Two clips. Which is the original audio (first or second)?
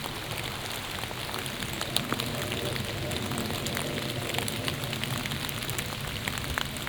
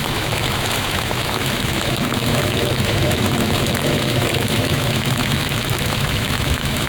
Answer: first